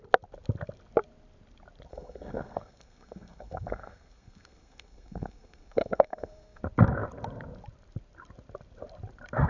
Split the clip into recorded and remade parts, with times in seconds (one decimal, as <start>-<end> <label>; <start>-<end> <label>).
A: 0.0-1.9 recorded; 1.9-6.6 remade; 6.6-9.5 recorded